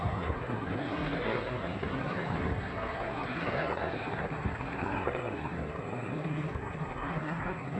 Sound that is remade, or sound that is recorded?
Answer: remade